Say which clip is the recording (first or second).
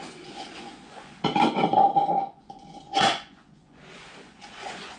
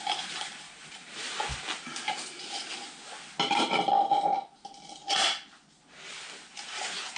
second